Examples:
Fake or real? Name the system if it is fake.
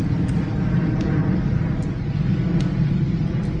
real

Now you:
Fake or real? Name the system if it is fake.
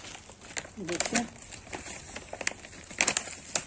real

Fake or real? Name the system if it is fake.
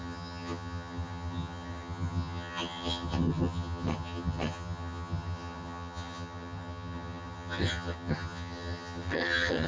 fake, vocoder, HiFi-GAN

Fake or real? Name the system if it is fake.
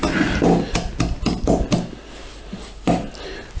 real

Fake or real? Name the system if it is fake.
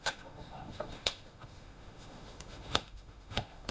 fake, autoencoder, DAC-VAE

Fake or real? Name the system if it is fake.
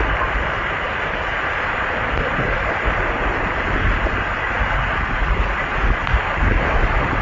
real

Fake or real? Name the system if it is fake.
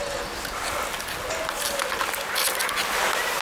real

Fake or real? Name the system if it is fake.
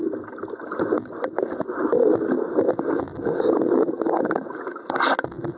real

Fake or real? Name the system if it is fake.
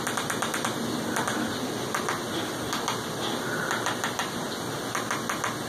real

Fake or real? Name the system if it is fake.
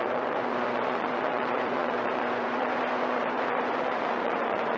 fake, vocoder, Vocos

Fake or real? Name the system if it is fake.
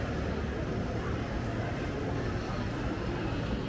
real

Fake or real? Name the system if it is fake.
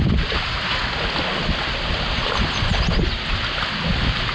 fake, vocoder, BigVGAN v2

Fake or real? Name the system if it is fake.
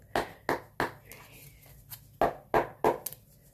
real